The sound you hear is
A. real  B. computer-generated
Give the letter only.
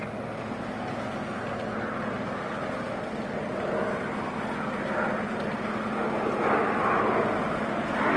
A